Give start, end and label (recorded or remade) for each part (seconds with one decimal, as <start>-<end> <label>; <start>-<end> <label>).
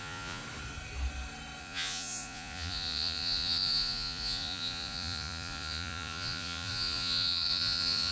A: 0.0-0.4 remade; 0.4-1.6 recorded; 1.6-8.1 remade